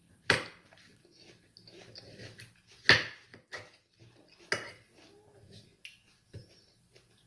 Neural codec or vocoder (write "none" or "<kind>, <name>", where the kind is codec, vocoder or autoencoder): none